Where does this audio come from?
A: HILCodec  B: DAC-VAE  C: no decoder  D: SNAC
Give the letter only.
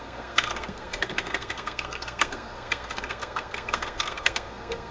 D